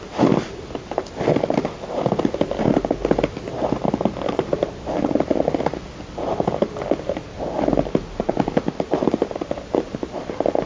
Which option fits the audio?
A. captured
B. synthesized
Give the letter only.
A